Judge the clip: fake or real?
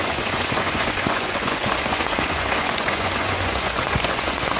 fake